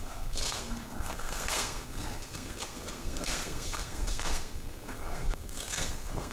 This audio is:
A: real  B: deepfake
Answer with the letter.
B